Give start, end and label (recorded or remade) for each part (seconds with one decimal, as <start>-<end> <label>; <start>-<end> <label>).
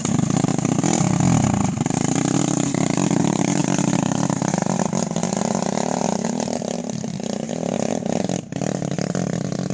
0.0-9.7 recorded